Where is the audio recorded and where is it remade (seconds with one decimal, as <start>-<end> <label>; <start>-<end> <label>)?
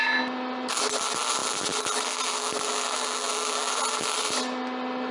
0.0-5.1 recorded